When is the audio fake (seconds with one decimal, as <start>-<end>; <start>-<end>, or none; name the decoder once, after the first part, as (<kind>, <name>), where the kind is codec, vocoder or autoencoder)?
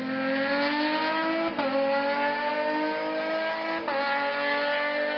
none